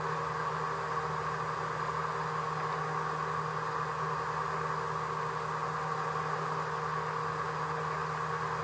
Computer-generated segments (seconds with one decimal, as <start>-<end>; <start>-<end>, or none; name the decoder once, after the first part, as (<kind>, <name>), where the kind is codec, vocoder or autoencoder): none